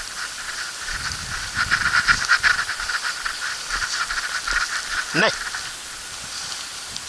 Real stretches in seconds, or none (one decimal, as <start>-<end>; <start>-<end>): 0.0-7.1